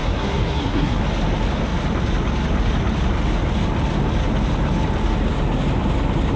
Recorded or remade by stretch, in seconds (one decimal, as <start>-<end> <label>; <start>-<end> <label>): 0.0-1.0 remade; 1.0-6.4 recorded